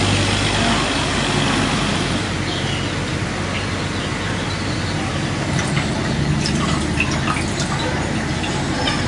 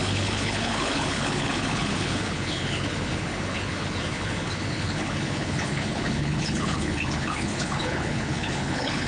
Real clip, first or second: first